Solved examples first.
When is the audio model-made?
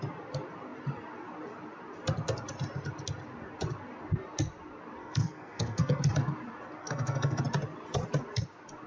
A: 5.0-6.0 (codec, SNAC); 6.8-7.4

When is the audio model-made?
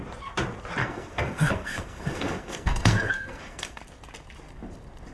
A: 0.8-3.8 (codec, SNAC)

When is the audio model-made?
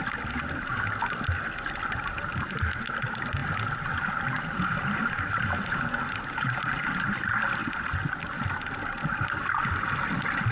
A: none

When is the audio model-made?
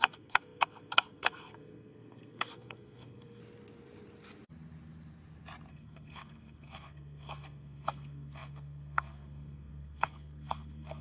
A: 0.0-3.4 (codec, SNAC); 5.7-11.0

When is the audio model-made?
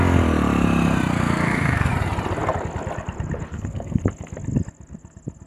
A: 1.2-1.9 (codec, SNAC); 3.5-4.0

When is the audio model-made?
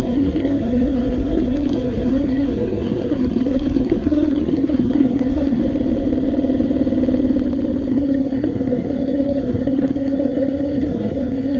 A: 0.0-5.6 (codec, SNAC); 7.9-11.6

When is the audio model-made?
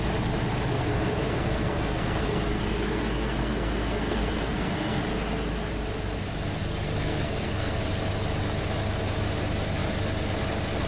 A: 0.7-5.0 (codec, SNAC); 6.6-7.8